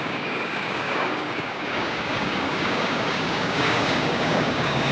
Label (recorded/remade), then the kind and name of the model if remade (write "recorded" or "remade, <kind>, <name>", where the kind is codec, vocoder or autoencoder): remade, codec, DAC